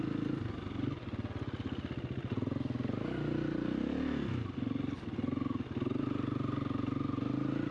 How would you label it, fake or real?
real